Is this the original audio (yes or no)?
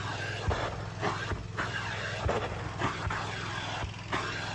yes